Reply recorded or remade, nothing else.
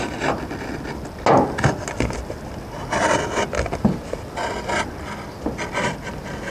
recorded